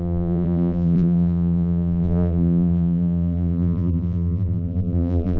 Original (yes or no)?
no